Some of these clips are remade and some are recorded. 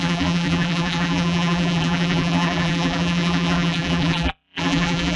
remade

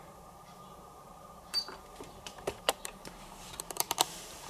remade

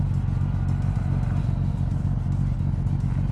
recorded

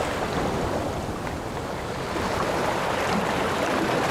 recorded